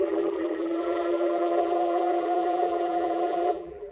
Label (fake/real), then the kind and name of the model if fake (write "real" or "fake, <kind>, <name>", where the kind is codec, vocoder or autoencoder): fake, vocoder, BigVGAN v2